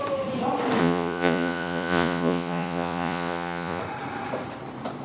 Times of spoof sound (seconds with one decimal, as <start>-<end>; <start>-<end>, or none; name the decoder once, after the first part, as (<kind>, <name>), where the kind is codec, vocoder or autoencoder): 0.8-3.8 (vocoder, Vocos)